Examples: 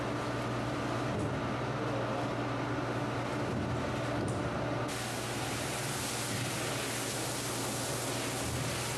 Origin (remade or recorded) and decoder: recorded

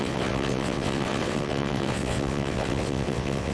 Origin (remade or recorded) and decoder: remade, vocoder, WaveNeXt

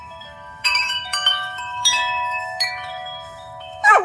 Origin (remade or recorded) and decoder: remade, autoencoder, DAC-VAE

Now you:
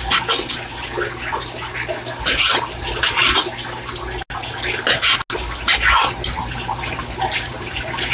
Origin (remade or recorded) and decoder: recorded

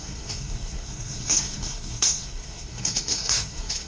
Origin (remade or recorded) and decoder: remade, codec, SNAC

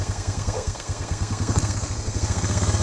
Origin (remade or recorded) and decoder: remade, codec, SNAC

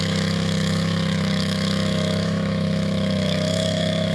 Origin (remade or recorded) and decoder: remade, autoencoder, DAC-VAE